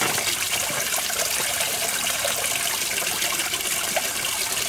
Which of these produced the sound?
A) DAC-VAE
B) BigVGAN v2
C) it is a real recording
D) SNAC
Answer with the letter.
B